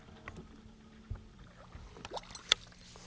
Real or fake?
real